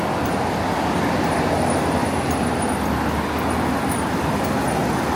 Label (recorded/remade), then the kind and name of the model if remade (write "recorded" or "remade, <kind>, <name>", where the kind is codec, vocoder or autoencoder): recorded